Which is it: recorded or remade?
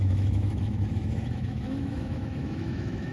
remade